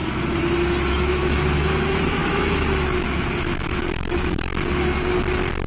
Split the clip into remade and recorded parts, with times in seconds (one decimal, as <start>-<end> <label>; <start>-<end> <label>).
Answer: 0.0-0.9 recorded; 0.9-4.5 remade; 4.5-5.7 recorded